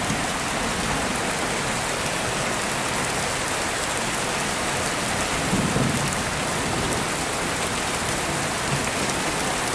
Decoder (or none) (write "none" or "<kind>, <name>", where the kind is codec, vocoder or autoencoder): none